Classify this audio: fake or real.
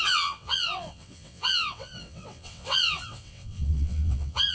fake